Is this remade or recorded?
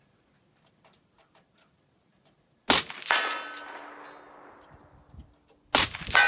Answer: recorded